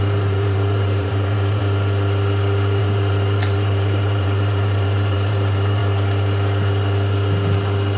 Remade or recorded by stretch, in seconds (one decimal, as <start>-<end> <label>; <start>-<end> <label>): 0.0-1.6 remade; 1.6-2.8 recorded; 2.8-5.8 remade; 5.8-8.0 recorded